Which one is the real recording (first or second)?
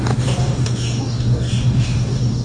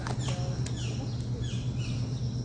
second